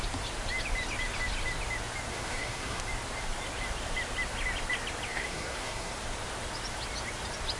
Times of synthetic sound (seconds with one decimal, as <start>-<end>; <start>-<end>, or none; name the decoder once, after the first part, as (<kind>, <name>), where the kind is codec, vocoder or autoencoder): 2.1-2.8 (codec, SNAC); 5.1-5.9